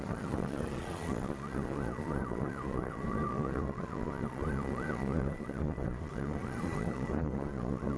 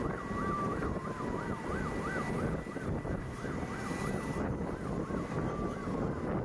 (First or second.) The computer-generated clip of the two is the first